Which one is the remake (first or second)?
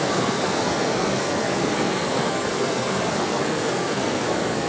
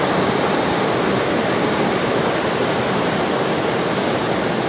first